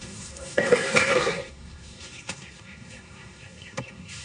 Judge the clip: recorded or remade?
remade